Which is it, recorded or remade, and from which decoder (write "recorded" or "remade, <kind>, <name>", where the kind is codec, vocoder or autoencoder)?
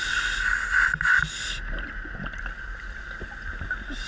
recorded